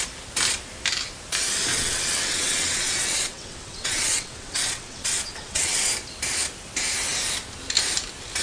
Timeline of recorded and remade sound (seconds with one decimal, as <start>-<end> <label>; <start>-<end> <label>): 0.0-1.7 recorded; 1.7-5.9 remade; 5.9-8.4 recorded

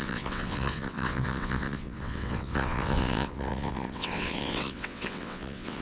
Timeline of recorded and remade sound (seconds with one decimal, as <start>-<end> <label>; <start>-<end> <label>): 0.0-5.8 remade

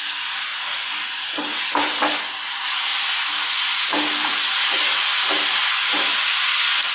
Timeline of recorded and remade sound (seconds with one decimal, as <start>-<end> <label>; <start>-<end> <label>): 0.0-6.9 recorded

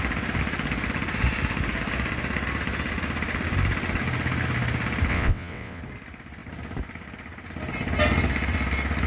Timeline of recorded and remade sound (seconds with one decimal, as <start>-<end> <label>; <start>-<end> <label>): 0.0-5.1 recorded; 5.1-5.8 remade; 5.8-9.1 recorded

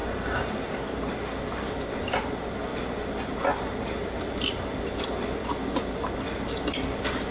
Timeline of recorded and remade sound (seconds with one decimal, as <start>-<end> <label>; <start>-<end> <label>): 0.0-7.3 recorded

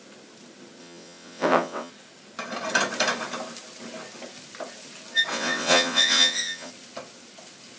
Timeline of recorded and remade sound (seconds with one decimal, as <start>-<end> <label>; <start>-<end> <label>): 0.0-0.8 recorded; 0.8-1.9 remade; 1.9-5.3 recorded; 5.3-6.7 remade; 6.7-7.8 recorded